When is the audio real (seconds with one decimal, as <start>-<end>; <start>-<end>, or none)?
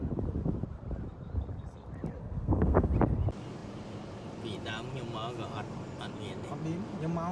0.0-2.2; 2.9-7.3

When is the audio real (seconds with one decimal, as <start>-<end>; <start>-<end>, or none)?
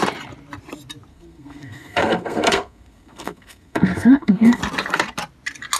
0.0-1.1; 4.6-5.8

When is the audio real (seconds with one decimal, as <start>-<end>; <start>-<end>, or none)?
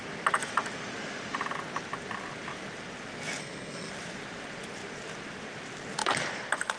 0.0-3.4; 3.9-6.8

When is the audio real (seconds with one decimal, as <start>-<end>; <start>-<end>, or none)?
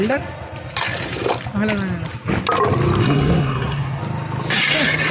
0.0-3.0; 4.0-5.1